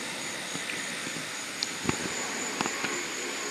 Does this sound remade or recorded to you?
recorded